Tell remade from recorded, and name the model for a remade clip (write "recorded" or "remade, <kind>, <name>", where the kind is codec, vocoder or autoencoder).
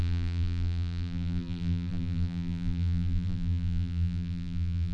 remade, vocoder, BigVGAN v2